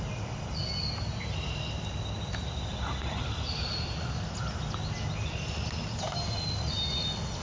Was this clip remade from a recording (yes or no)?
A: no